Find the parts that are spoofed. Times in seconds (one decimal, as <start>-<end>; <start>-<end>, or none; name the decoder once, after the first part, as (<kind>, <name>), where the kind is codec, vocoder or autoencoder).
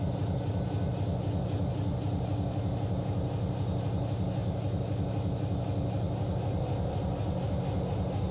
none